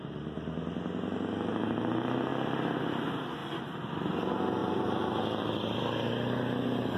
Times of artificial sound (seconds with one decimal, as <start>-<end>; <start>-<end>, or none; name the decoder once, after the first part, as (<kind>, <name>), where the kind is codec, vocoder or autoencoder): 3.4-4.1 (vocoder, BigVGAN v2); 4.6-5.8

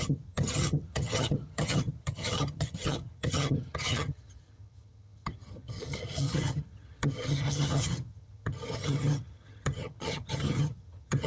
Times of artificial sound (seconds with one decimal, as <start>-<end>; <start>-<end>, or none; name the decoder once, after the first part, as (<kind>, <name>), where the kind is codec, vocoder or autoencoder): 0.0-11.3 (vocoder, HiFi-GAN)